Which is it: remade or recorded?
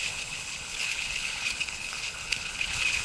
remade